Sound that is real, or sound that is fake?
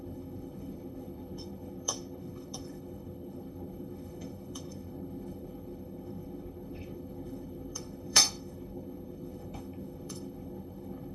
fake